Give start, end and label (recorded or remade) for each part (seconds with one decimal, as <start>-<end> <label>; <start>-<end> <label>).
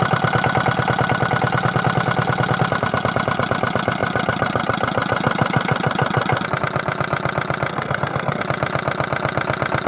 0.0-7.7 recorded; 7.7-8.4 remade; 8.4-9.9 recorded